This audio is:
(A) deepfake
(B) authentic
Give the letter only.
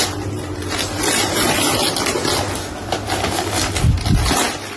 B